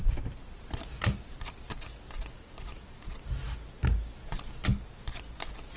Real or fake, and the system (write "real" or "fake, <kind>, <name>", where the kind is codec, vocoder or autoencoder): real